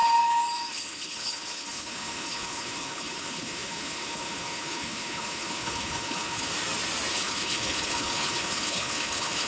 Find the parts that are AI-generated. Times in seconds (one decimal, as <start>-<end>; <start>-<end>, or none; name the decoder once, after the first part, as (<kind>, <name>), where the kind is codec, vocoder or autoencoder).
0.7-6.5 (codec, HILCodec); 7.1-9.5